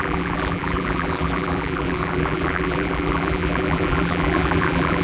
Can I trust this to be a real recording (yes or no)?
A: no